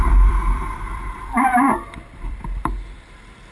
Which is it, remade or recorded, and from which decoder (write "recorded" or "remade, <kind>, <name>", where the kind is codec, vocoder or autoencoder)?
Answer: remade, vocoder, BigVGAN v2